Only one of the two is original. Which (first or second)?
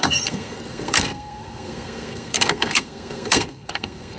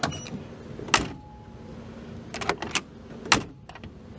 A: second